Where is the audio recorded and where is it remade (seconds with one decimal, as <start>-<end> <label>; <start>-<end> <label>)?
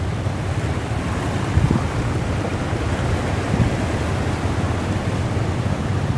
0.0-6.2 recorded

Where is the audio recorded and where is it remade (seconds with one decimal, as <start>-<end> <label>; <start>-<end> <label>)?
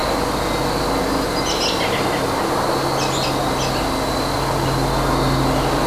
0.0-5.9 recorded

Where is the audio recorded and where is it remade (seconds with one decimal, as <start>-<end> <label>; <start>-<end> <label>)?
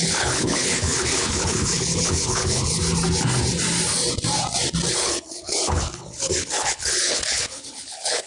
0.0-2.8 remade; 2.8-4.9 recorded; 4.9-8.3 remade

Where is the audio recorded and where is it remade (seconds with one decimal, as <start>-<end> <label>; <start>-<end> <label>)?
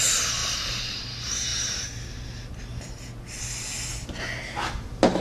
0.0-5.2 recorded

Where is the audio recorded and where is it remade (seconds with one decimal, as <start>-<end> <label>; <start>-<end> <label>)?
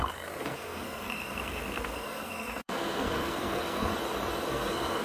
0.0-3.9 remade; 3.9-4.5 recorded; 4.5-5.0 remade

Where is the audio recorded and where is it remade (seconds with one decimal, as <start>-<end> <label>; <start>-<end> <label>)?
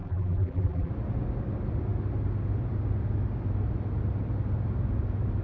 0.0-0.9 remade; 0.9-5.4 recorded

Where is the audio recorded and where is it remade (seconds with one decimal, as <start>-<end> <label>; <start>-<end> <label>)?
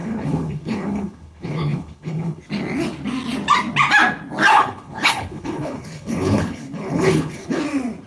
0.0-2.4 remade; 2.4-4.5 recorded; 4.5-7.6 remade; 7.6-8.1 recorded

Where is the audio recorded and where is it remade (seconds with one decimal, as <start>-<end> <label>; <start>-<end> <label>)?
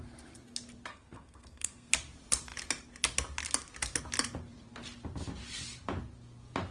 0.0-0.9 recorded; 0.9-1.9 remade; 1.9-6.7 recorded